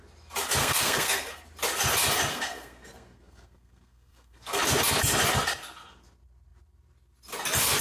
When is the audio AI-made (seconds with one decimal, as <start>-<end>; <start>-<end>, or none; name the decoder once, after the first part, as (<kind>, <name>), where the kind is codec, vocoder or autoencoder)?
0.6-1.4 (codec, SNAC); 2.3-4.6

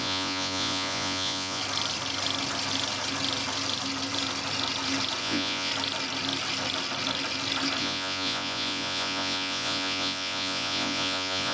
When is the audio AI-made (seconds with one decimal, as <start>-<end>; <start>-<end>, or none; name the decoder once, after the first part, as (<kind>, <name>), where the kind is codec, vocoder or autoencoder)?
0.0-1.6 (vocoder, Vocos); 5.2-5.7; 7.8-11.5

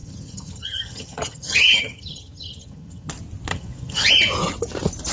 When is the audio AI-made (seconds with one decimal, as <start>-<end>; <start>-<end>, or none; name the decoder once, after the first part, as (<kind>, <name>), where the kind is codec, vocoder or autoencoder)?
0.0-3.1 (vocoder, HiFi-GAN); 3.5-4.1

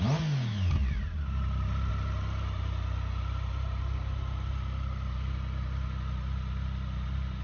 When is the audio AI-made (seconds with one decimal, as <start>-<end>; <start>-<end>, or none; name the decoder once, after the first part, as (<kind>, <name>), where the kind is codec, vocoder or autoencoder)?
none

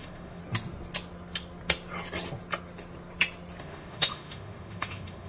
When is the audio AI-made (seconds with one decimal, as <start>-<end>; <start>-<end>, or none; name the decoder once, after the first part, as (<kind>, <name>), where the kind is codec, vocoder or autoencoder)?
0.0-0.4 (autoencoder, DAC-VAE); 3.6-5.3

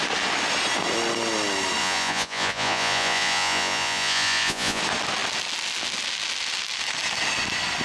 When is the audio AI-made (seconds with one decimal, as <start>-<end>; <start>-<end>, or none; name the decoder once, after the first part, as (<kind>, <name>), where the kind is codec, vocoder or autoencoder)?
1.8-4.8 (vocoder, Vocos)

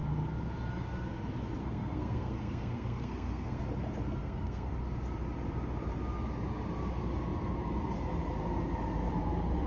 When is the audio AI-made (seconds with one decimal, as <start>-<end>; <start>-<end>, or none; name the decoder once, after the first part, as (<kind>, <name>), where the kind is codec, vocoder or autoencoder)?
1.6-3.6 (codec, SNAC); 4.2-4.7

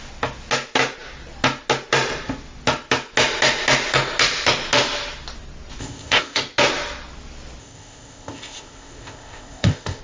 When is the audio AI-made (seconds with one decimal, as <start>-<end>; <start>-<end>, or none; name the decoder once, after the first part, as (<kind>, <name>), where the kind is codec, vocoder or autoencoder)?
5.8-6.4 (codec, ZipCodec); 7.6-10.0